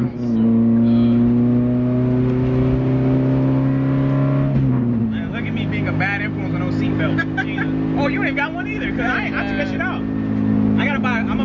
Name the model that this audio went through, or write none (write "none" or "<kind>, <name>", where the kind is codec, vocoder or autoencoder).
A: none